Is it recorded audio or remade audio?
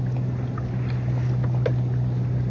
recorded